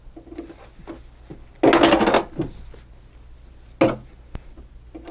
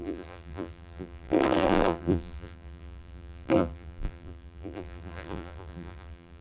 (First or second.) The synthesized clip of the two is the second